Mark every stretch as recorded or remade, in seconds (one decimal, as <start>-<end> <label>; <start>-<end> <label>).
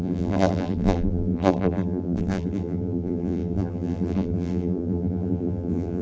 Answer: 0.0-6.0 remade